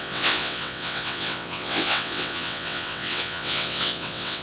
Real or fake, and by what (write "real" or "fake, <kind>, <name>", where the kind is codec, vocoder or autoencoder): fake, vocoder, WaveNeXt